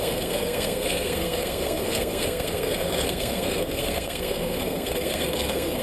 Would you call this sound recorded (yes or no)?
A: no